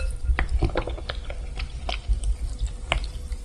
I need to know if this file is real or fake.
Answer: real